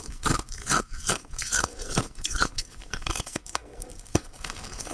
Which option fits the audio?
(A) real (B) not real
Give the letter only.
B